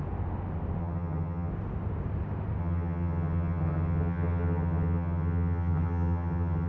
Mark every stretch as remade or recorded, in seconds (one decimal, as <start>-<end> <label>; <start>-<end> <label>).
0.0-0.8 recorded; 0.8-1.5 remade; 1.5-2.6 recorded; 2.6-6.7 remade